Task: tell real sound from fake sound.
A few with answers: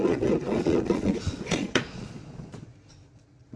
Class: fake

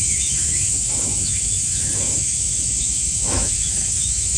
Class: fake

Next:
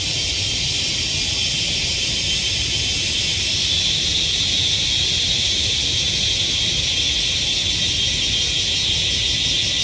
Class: real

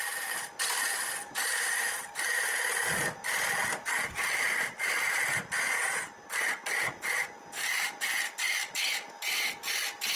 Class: real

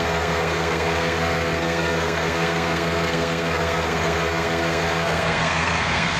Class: fake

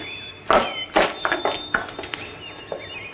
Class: real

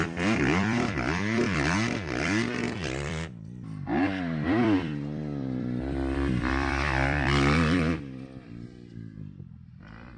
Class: fake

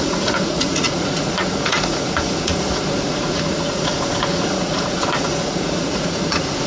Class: fake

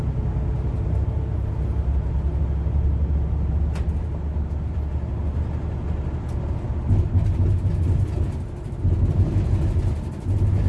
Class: real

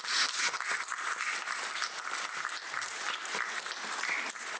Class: real